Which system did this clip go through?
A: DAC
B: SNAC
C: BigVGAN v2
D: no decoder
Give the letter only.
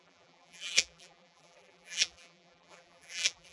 C